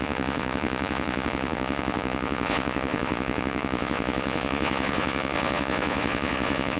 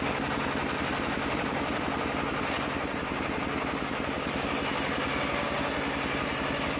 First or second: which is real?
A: second